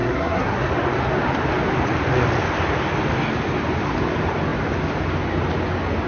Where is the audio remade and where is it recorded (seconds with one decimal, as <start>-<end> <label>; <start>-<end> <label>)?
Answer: 0.0-0.7 remade; 0.7-6.1 recorded